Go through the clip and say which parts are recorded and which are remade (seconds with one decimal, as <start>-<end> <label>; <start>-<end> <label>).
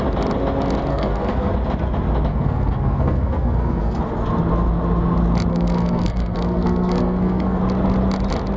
0.0-0.9 recorded; 0.9-1.5 remade; 1.5-2.3 recorded; 2.3-4.0 remade; 4.0-5.5 recorded; 5.5-7.6 remade; 7.6-8.6 recorded